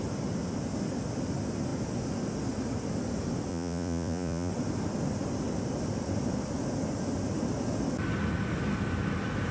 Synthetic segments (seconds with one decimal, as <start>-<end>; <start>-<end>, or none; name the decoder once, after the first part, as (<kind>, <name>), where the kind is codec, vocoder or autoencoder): 3.5-4.5 (vocoder, Vocos)